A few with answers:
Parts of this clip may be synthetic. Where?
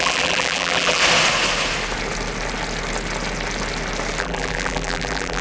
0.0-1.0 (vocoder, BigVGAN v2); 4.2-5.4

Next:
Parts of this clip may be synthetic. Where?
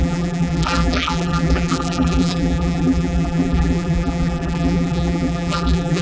0.0-6.0 (vocoder, BigVGAN v2)